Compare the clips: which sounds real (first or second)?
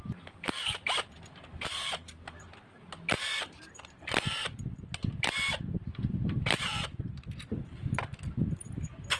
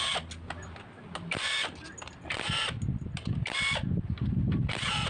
second